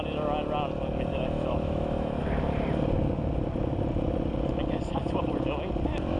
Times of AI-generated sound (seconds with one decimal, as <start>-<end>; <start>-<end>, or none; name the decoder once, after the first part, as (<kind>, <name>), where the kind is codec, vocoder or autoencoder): 1.1-2.2 (autoencoder, DAC-VAE)